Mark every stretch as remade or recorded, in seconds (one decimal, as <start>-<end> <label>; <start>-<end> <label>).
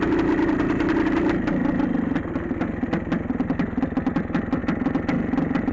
0.0-5.7 recorded